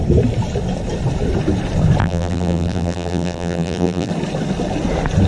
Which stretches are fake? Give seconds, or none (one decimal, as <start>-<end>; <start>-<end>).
2.0-4.1